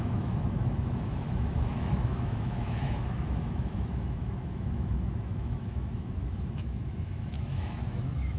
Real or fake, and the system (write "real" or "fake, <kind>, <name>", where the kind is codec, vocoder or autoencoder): fake, autoencoder, DAC-VAE